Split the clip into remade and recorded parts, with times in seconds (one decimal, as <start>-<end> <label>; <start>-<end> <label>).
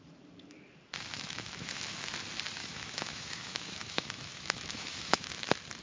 0.0-1.1 recorded; 1.1-2.1 remade; 2.1-2.6 recorded; 2.6-5.3 remade; 5.3-5.8 recorded